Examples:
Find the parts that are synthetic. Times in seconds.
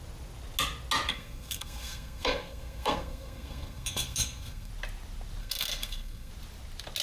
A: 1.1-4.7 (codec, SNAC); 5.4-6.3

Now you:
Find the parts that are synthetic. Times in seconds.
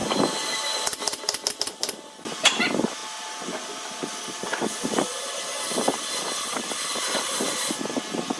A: none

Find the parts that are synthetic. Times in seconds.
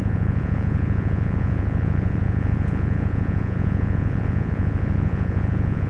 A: 0.0-5.9 (vocoder, Vocos)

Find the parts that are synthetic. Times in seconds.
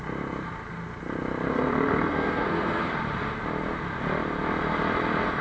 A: 1.5-2.9 (codec, SNAC)